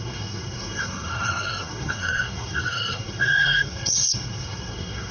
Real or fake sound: fake